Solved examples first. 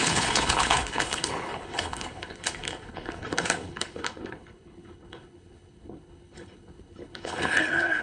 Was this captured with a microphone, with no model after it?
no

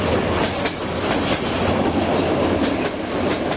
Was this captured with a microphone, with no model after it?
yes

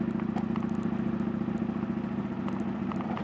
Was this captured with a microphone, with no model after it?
yes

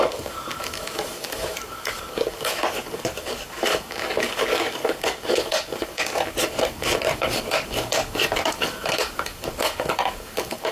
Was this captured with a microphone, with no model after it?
no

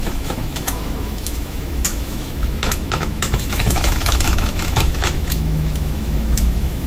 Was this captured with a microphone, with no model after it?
no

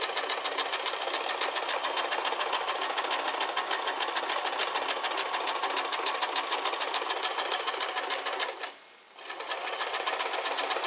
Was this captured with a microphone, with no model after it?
yes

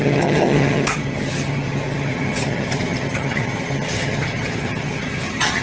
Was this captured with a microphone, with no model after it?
no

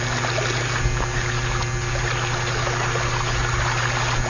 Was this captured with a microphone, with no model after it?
yes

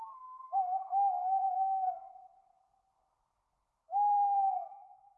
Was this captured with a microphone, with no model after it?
no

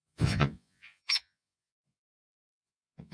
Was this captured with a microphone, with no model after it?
no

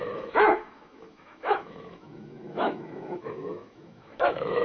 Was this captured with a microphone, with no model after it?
no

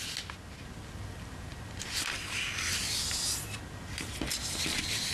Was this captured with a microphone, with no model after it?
yes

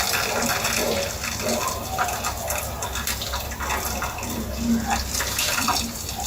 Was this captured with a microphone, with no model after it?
yes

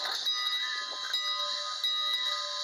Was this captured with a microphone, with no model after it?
yes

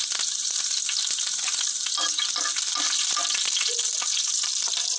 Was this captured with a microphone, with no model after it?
yes